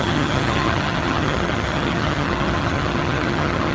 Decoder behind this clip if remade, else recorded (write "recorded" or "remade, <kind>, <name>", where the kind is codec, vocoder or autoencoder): remade, vocoder, HiFi-GAN